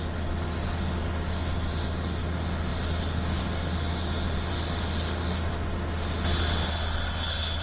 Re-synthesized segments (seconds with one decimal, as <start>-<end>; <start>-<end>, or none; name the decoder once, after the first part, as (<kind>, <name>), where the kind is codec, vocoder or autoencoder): none